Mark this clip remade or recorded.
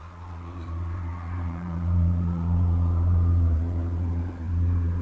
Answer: remade